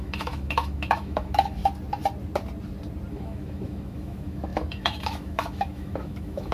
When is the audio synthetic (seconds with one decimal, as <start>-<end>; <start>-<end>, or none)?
0.0-1.6; 3.1-6.5